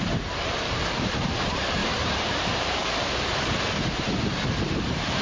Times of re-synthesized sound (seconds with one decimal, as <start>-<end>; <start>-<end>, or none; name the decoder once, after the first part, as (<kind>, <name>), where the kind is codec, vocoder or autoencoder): 0.0-5.2 (vocoder, BigVGAN v2)